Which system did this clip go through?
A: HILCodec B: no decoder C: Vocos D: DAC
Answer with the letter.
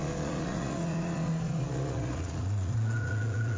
C